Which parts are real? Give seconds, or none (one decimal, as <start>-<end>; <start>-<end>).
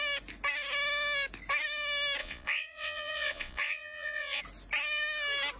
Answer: 0.0-2.2; 4.4-5.6